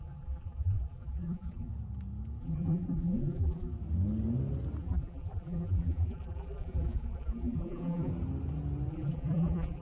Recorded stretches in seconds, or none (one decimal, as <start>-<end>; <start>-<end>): 1.7-2.4; 3.7-4.8; 8.1-8.9